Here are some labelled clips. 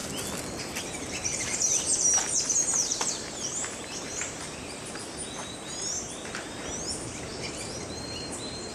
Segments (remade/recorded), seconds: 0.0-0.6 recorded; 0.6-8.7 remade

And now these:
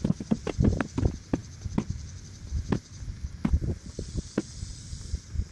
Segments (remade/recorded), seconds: 0.0-5.5 recorded

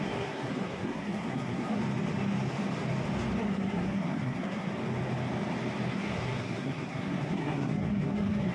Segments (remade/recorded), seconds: 0.0-1.8 remade; 1.8-3.4 recorded; 3.4-4.7 remade; 4.7-5.9 recorded; 5.9-8.5 remade

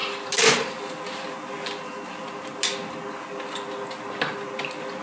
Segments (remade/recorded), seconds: 0.0-5.0 recorded

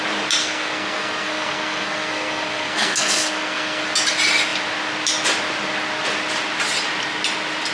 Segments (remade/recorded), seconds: 0.0-0.4 recorded; 0.4-3.8 remade; 3.8-7.7 recorded

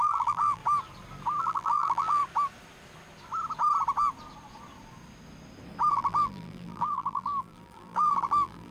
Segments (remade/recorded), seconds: 0.0-0.6 remade; 0.6-1.4 recorded; 1.4-2.2 remade; 2.2-5.9 recorded; 5.9-8.7 remade

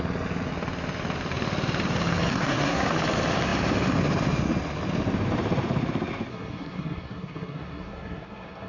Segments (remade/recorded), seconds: 0.0-2.3 recorded; 2.3-2.9 remade; 2.9-6.3 recorded; 6.3-8.7 remade

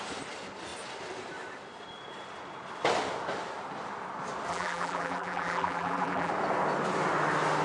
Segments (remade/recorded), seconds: 0.0-4.5 recorded; 4.5-6.3 remade; 6.3-7.6 recorded